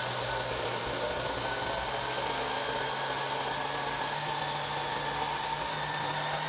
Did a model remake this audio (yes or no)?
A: no